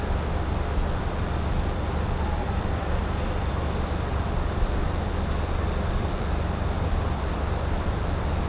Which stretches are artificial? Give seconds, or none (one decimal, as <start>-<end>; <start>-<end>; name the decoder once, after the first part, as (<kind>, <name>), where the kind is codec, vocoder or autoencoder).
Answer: 0.8-3.5 (vocoder, BigVGAN v2); 4.1-8.5

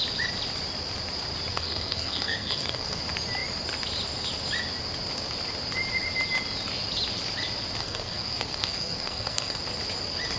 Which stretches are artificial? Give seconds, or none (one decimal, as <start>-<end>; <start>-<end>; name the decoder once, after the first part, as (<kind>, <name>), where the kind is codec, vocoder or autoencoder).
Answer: 1.5-3.0 (codec, SNAC); 7.8-9.6

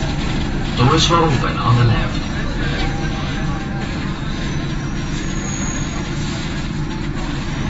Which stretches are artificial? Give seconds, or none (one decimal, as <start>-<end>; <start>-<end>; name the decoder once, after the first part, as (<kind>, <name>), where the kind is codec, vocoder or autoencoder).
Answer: 1.4-6.0 (vocoder, Vocos)

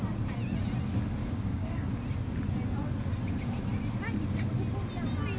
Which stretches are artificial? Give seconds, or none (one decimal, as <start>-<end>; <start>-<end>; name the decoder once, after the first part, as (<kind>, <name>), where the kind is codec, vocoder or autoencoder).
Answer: 1.2-1.9 (codec, DAC)

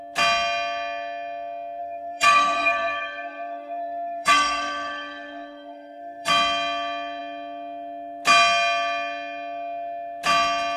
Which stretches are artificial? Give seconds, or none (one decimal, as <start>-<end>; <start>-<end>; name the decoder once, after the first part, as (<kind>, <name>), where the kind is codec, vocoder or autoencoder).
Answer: 1.8-6.3 (codec, SNAC)

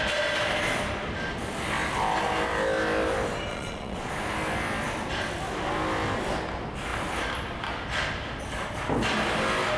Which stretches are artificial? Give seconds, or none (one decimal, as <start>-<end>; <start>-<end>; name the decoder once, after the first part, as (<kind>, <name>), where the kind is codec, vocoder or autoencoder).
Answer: 3.5-4.1 (vocoder, Vocos)

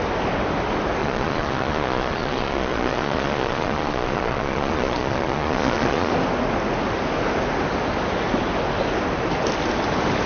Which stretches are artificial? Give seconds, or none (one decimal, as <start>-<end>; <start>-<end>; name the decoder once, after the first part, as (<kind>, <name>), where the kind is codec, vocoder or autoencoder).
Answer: 1.0-6.1 (vocoder, Vocos)

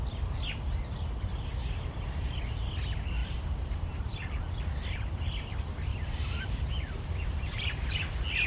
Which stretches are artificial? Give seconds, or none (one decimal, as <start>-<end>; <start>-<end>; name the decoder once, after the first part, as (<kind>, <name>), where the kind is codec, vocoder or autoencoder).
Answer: 3.2-4.4 (vocoder, BigVGAN v2); 5.9-8.0